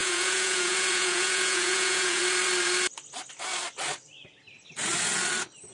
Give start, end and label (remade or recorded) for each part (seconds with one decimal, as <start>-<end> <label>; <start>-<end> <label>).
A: 0.0-2.2 remade; 2.2-5.7 recorded